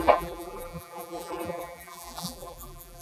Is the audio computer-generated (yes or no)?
yes